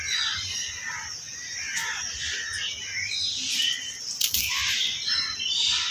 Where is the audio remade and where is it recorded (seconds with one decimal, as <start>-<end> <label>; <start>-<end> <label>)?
0.0-5.9 recorded